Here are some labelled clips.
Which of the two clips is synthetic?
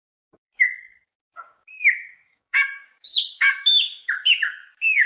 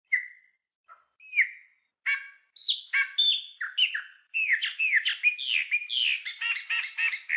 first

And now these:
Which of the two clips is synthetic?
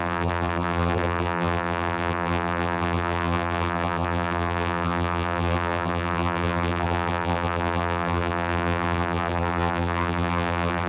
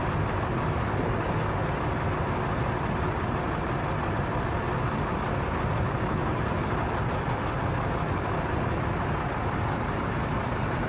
first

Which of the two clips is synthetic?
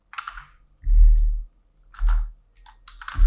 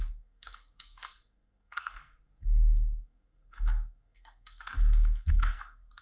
second